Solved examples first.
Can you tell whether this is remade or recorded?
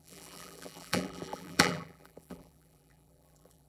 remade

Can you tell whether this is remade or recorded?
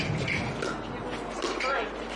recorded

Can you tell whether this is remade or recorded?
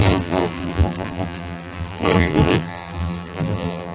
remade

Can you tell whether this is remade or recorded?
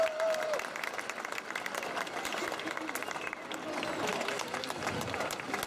recorded